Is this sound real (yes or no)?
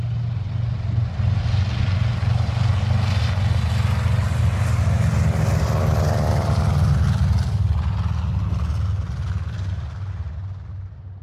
yes